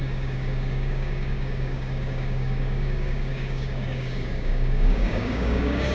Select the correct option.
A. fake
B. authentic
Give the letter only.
A